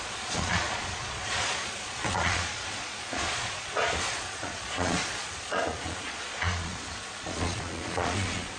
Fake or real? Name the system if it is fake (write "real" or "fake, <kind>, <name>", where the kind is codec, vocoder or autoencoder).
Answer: fake, vocoder, Vocos